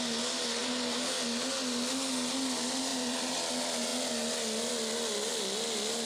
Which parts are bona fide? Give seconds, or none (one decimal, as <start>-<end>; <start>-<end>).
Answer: 0.0-2.9; 3.5-6.1